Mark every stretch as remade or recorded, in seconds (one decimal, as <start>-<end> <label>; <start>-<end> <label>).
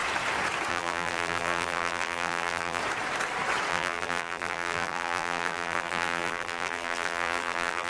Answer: 0.0-0.7 recorded; 0.7-2.8 remade; 2.8-3.7 recorded; 3.7-7.9 remade